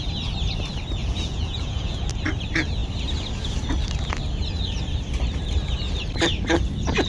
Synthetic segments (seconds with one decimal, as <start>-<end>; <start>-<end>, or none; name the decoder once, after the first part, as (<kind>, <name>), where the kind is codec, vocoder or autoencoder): 1.0-2.1 (vocoder, Vocos)